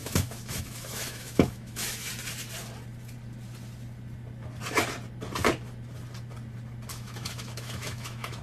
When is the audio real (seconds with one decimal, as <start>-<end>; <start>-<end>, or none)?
2.1-6.9